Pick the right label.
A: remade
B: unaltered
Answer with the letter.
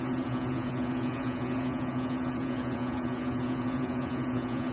A